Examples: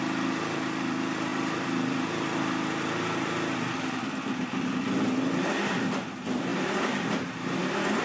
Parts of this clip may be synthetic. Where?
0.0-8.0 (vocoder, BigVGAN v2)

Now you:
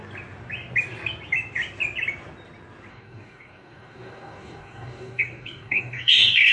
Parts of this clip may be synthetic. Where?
2.9-6.5 (codec, DAC)

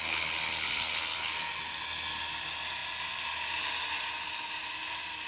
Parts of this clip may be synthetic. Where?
none

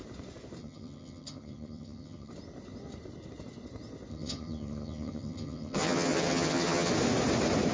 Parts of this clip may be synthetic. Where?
0.6-2.3 (vocoder, HiFi-GAN); 4.1-6.9

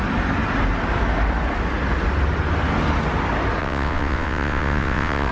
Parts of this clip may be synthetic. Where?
3.6-5.3 (vocoder, WaveNeXt)

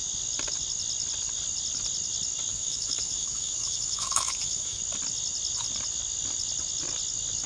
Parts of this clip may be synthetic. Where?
2.5-4.8 (autoencoder, DAC-VAE)

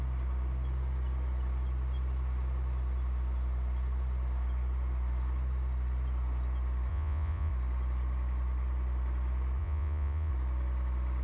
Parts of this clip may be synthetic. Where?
6.9-7.5 (vocoder, Vocos); 9.6-10.3